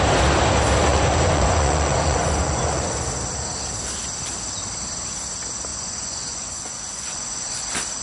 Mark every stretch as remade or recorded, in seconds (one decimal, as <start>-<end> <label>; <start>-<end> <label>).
0.0-0.9 recorded; 0.9-2.9 remade; 2.9-5.7 recorded; 5.7-7.6 remade; 7.6-8.0 recorded